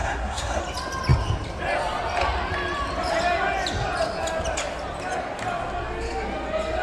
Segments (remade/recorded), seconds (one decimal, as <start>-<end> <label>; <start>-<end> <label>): 0.0-0.6 remade; 0.6-6.8 recorded